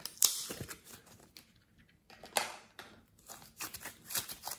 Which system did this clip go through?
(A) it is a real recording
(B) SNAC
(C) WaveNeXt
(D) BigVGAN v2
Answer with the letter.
A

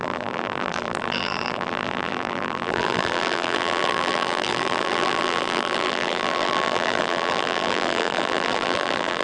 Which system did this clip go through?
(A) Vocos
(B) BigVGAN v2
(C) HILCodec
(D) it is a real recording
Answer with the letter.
B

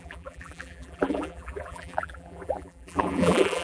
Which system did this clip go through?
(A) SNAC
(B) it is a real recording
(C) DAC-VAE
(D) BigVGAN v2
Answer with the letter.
D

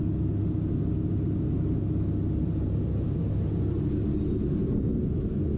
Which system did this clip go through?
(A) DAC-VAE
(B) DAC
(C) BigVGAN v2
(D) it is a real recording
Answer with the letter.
D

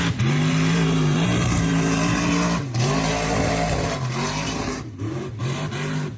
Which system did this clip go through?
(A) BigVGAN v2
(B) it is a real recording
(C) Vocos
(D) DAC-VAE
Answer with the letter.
A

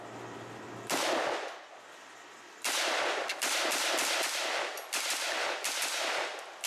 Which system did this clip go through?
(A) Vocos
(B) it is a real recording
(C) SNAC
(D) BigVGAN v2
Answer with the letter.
B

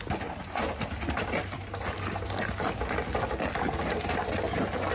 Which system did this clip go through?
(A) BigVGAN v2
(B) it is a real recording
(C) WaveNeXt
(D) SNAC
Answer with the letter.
B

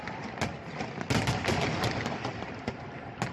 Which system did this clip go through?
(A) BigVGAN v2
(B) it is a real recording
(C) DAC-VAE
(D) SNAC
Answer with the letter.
B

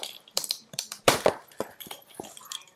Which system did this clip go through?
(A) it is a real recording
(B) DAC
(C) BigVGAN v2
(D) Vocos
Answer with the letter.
C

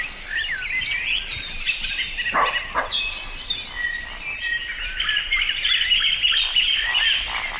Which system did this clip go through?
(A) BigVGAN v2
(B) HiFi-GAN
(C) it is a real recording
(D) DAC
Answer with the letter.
A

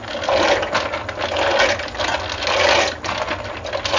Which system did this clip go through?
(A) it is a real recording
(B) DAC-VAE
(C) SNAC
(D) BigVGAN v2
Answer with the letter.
A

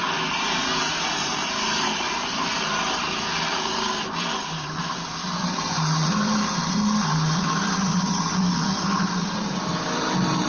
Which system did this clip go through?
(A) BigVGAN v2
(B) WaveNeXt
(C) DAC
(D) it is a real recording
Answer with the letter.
A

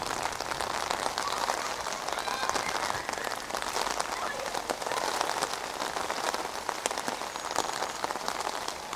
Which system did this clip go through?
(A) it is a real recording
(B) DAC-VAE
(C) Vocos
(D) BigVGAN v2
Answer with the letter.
A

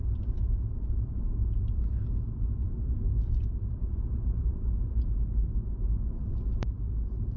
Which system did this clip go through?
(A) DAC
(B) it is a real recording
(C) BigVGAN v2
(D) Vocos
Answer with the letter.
C